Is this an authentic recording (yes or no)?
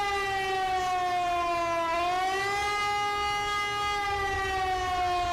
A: yes